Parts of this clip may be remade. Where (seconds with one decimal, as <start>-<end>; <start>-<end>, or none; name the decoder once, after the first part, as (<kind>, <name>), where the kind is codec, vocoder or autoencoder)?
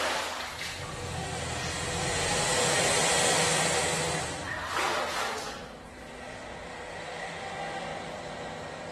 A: none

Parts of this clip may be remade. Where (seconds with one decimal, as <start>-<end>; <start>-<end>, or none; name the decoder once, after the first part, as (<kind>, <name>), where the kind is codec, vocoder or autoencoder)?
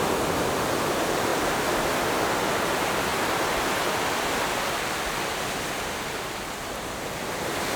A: none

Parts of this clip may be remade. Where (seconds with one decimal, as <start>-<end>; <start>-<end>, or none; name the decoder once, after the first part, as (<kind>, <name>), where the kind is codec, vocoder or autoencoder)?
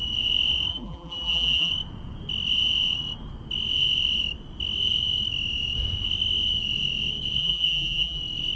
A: 0.7-1.7 (vocoder, BigVGAN v2); 7.4-8.2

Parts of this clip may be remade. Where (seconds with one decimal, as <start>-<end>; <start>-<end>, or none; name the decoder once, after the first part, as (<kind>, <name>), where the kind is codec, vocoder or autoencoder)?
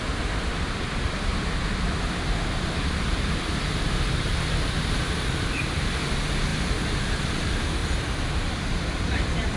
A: 0.0-1.3 (vocoder, BigVGAN v2); 2.0-7.8; 8.5-9.6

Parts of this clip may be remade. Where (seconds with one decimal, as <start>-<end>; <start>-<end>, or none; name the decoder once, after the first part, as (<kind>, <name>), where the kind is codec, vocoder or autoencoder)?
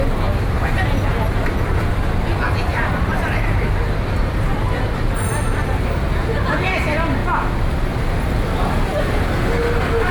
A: 1.1-1.9 (vocoder, BigVGAN v2); 2.7-3.7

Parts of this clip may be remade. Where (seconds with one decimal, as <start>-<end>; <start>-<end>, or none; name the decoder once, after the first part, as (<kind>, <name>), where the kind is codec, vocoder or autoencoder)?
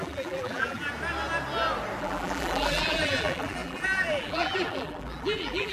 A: 0.0-0.9 (vocoder, BigVGAN v2); 2.0-5.7